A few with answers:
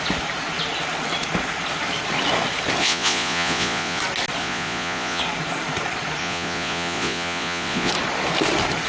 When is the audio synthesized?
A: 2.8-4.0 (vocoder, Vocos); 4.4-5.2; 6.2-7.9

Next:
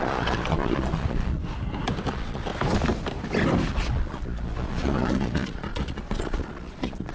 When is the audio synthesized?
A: 0.0-1.4 (vocoder, Vocos); 2.1-2.5; 3.7-7.1

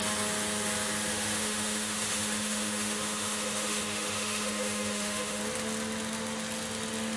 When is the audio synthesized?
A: 1.1-5.4 (autoencoder, DAC-VAE)

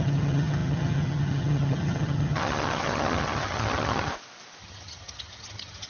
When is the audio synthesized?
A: 0.0-4.1 (vocoder, HiFi-GAN); 4.6-5.9

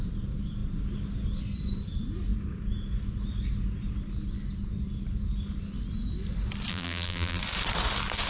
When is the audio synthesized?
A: 6.7-7.4 (vocoder, BigVGAN v2)

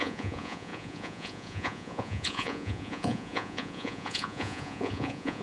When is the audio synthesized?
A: 0.0-5.4 (vocoder, Vocos)

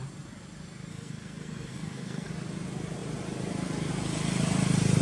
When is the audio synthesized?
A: 0.9-2.3 (codec, SNAC)